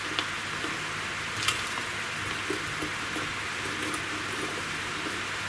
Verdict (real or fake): real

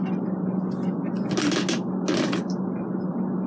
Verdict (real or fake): real